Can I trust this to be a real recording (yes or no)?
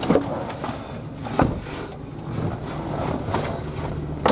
yes